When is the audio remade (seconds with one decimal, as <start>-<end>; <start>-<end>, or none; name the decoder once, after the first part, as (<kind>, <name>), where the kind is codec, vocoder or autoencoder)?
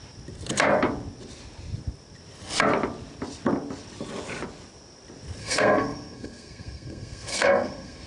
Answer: 5.4-8.1 (codec, SNAC)